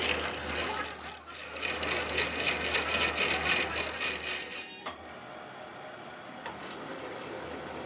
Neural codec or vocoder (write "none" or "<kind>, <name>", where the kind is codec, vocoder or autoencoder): none